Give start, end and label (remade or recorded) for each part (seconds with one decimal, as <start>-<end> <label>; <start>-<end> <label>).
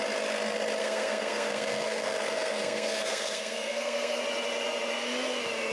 0.0-0.8 recorded; 0.8-4.2 remade; 4.2-5.7 recorded